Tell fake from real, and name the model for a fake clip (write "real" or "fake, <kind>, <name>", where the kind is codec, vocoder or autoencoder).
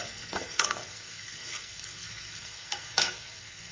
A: fake, codec, SNAC